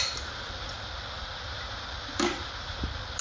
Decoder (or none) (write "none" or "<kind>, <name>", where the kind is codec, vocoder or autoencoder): none